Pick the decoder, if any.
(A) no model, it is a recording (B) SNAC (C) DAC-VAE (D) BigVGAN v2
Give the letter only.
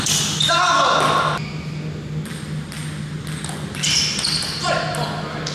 A